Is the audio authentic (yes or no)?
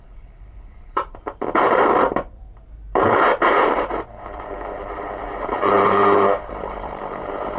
no